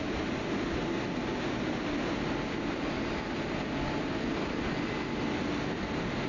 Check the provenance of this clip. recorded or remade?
recorded